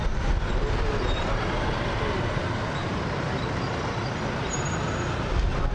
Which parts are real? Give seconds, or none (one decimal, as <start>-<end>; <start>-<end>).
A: 0.0-2.8; 3.3-5.7